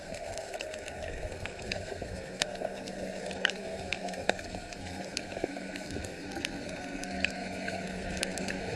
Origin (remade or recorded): remade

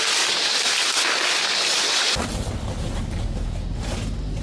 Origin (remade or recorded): recorded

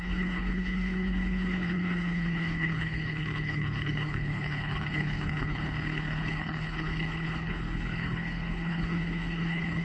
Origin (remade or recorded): remade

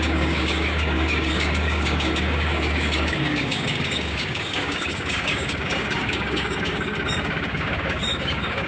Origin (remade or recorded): remade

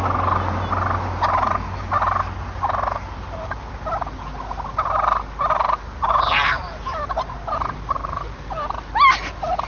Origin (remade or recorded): recorded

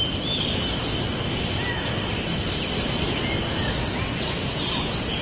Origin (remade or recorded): recorded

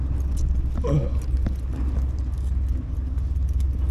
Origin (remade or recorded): recorded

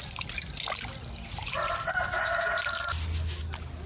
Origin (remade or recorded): recorded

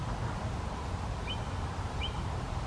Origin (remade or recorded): recorded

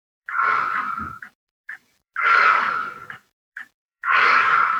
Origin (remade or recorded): remade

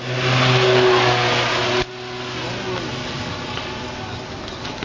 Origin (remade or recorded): recorded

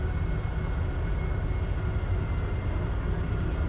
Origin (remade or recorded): recorded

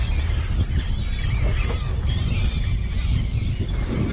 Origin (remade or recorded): recorded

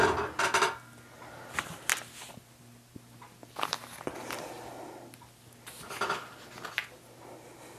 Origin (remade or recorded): recorded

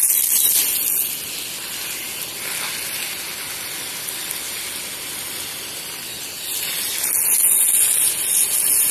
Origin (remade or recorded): recorded